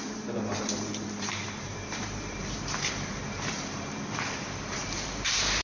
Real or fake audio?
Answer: fake